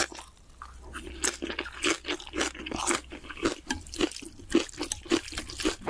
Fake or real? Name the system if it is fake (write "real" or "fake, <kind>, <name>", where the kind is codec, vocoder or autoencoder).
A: real